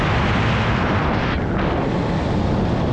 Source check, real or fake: real